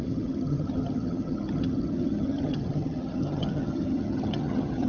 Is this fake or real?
fake